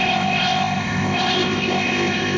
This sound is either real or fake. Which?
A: fake